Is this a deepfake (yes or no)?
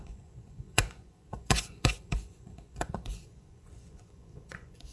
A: yes